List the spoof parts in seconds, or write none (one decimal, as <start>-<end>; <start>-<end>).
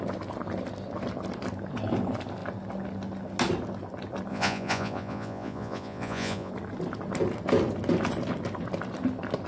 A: 4.3-6.5